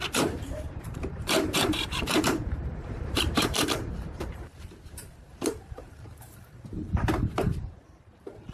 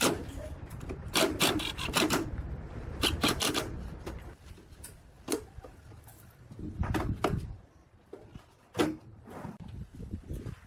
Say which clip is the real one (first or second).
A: second